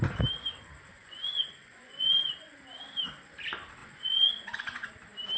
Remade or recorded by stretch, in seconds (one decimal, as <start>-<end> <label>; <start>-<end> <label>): 0.0-0.9 recorded; 0.9-2.6 remade; 2.6-3.8 recorded; 3.8-4.9 remade; 4.9-5.4 recorded